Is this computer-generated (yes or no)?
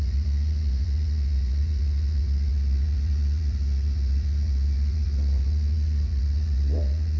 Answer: yes